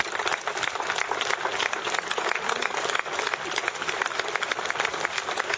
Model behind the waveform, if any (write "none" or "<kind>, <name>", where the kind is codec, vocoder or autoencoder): none